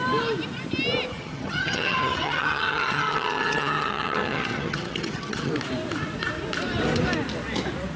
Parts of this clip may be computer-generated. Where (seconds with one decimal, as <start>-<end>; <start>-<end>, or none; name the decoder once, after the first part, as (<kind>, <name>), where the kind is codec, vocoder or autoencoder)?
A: 1.1-5.5 (vocoder, HiFi-GAN)